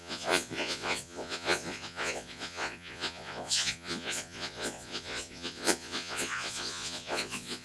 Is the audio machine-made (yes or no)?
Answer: yes